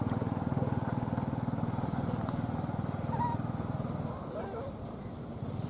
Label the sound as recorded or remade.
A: recorded